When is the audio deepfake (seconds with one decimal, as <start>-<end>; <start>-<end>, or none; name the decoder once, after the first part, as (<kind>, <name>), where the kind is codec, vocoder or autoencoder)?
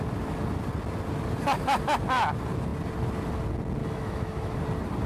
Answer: 3.8-4.6 (autoencoder, DAC-VAE)